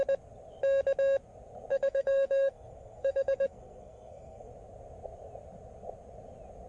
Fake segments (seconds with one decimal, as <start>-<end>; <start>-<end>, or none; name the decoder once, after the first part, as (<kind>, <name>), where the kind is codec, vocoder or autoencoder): 1.7-4.5 (codec, SNAC)